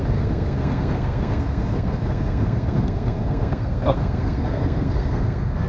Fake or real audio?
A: fake